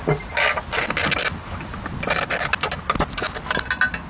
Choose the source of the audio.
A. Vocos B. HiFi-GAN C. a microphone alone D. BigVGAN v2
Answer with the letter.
C